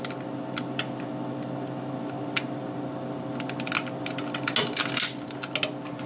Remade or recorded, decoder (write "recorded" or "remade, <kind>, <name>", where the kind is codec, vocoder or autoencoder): recorded